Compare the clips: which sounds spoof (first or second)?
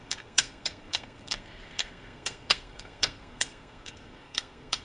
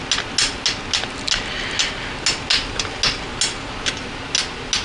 first